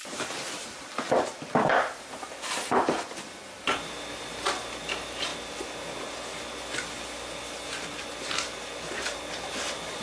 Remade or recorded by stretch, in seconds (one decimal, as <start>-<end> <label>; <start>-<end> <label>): 0.0-0.8 recorded; 0.8-5.3 remade; 5.3-9.0 recorded; 9.0-10.0 remade